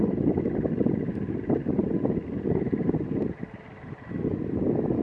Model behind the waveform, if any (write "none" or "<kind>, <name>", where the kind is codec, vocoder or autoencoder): none